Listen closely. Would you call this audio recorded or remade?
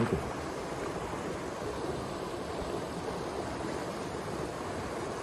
recorded